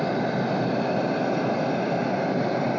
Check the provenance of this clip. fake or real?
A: real